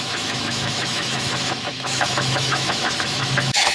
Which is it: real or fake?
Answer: fake